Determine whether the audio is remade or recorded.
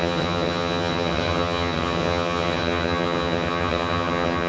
remade